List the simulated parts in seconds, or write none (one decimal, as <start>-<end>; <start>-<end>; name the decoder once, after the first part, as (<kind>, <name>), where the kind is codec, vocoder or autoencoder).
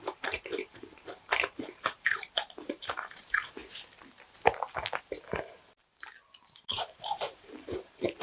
0.0-3.6 (vocoder, BigVGAN v2); 6.7-8.2